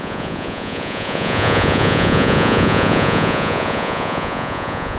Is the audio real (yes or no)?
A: no